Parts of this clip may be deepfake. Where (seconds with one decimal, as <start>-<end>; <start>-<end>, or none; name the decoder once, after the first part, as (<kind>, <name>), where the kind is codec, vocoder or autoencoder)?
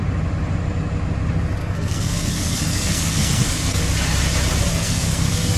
1.6-3.8 (codec, SNAC); 4.7-5.6